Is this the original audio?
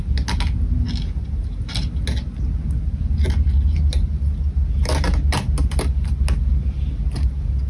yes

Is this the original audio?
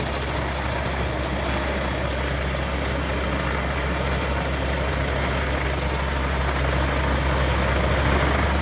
yes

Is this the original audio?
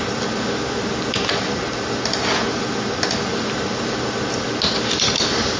yes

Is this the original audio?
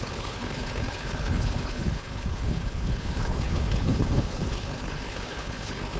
no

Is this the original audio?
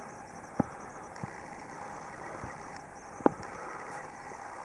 yes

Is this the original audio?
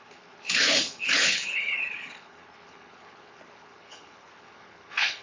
no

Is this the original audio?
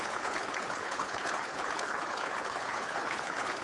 no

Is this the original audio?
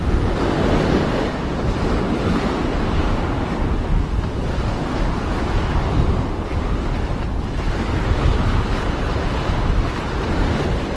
yes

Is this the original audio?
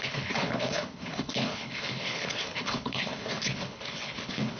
no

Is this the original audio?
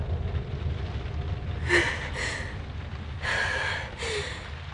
yes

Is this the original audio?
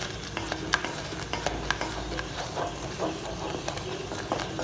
yes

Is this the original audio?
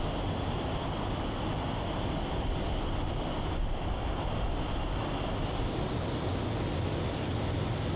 yes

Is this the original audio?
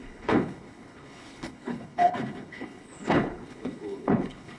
no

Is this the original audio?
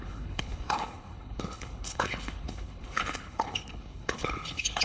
no